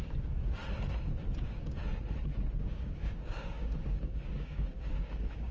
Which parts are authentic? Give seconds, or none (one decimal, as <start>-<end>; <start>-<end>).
0.6-1.4; 1.8-2.6